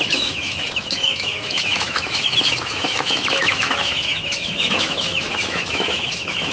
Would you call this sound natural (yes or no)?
no